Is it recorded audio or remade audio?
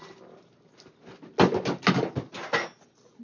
recorded